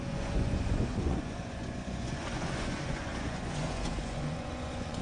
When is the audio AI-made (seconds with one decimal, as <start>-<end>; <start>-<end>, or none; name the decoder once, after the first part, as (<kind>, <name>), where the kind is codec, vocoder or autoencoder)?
0.0-5.0 (vocoder, Vocos)